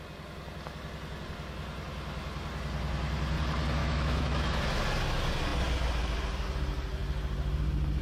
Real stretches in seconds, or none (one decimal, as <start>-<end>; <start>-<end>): 0.0-3.8; 4.8-8.0